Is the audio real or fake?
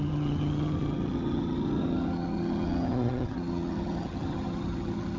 fake